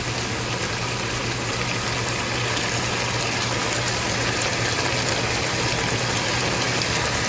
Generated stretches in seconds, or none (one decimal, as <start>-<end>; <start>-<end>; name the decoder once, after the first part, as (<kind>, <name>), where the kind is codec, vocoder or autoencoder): none